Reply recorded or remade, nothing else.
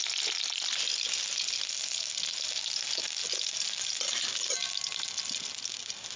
recorded